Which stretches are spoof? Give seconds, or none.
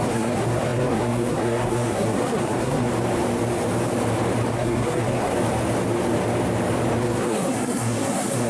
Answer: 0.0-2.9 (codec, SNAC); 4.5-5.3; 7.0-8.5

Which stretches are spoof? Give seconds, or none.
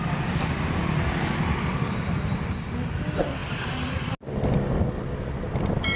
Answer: none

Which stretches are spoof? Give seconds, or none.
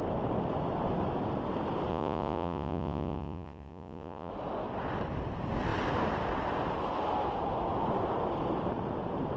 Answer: 1.9-4.3 (vocoder, Vocos)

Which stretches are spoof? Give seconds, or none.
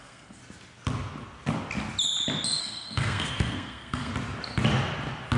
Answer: 0.0-0.4 (codec, SNAC); 2.6-4.1